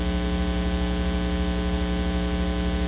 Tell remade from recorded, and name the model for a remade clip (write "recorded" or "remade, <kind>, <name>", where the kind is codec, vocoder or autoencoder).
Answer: recorded